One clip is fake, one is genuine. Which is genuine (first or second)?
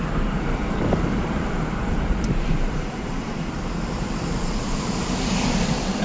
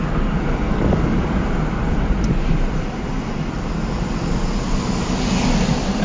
second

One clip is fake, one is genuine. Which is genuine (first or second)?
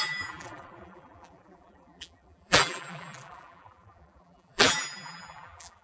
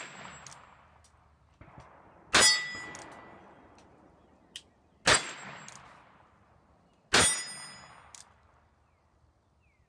second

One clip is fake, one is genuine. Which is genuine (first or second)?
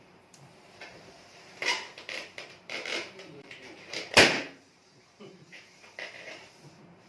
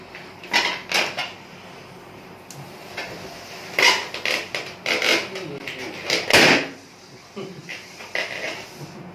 second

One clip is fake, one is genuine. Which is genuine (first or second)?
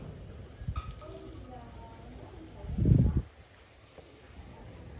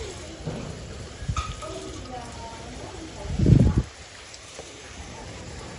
first